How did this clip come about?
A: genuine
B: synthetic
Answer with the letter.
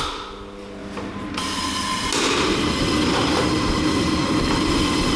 A